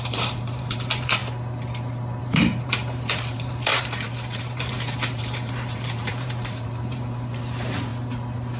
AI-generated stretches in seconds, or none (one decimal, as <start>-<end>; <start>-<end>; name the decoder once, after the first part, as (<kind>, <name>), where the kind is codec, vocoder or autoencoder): 0.0-1.2 (vocoder, BigVGAN v2); 2.2-7.9